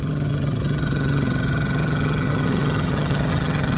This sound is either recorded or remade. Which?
remade